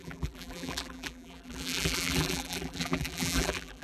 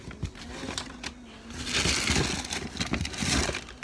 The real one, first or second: second